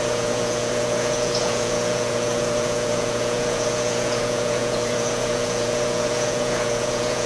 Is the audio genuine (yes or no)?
no